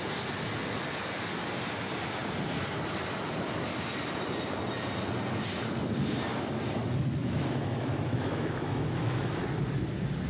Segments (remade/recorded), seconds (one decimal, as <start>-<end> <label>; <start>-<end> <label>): 0.0-7.2 recorded; 7.2-9.4 remade; 9.4-10.3 recorded